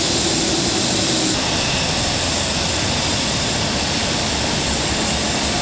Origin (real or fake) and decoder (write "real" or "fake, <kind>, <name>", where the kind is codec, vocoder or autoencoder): real